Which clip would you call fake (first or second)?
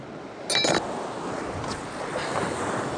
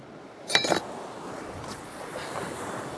second